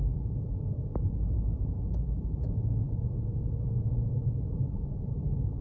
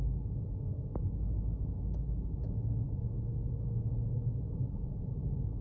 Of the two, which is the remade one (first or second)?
first